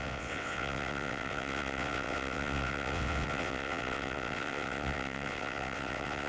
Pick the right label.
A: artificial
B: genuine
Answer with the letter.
A